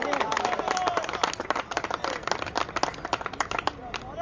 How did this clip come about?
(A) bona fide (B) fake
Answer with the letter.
A